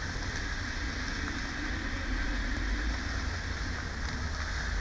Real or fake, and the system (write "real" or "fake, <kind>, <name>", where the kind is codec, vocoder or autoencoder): real